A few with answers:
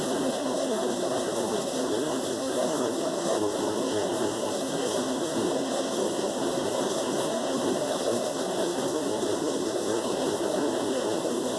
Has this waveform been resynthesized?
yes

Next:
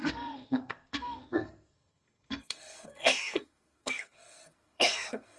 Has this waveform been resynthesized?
yes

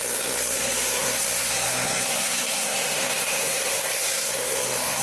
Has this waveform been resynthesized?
yes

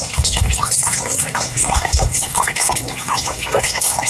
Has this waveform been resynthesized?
yes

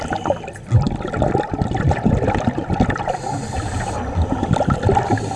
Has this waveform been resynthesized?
no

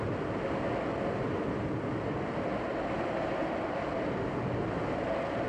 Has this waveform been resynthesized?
no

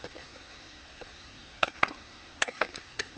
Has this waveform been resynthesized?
yes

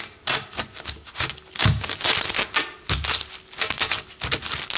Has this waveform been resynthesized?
no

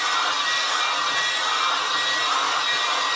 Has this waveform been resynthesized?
no